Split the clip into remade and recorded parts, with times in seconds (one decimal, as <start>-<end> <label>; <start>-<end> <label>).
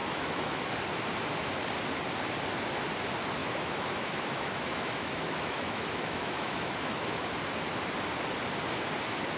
0.0-0.6 remade; 0.6-3.4 recorded; 3.4-7.3 remade; 7.3-9.4 recorded